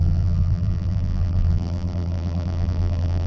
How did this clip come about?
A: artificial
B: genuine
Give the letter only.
A